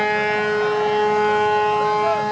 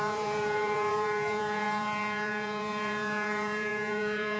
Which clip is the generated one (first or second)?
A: second